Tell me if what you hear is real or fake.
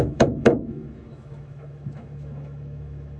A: fake